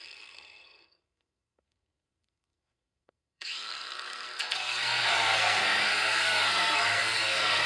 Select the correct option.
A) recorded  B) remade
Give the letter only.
B